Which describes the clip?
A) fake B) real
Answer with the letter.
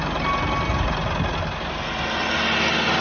B